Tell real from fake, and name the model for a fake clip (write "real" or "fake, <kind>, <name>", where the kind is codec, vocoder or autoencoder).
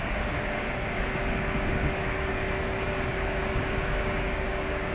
fake, codec, DAC